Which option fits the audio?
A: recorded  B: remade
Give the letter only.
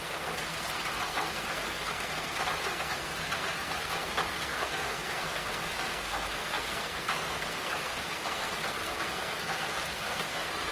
B